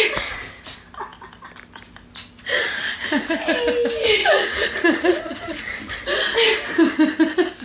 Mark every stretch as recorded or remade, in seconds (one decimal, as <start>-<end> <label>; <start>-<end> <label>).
0.0-4.2 recorded; 4.2-5.9 remade; 5.9-7.6 recorded